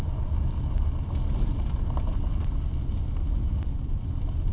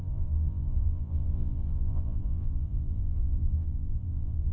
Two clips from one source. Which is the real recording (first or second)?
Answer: first